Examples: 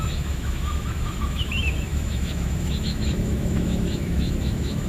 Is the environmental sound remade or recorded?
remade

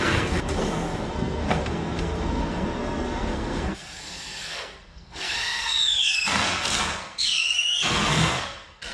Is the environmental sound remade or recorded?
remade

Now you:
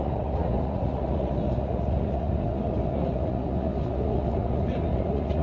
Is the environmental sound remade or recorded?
remade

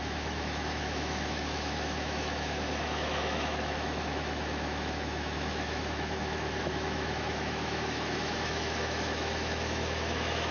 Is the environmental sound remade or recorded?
remade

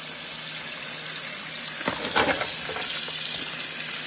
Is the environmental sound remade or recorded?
recorded